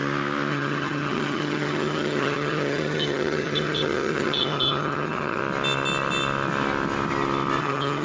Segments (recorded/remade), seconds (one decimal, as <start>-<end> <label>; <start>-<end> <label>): 0.0-0.5 recorded; 0.5-5.4 remade; 5.4-7.6 recorded; 7.6-8.0 remade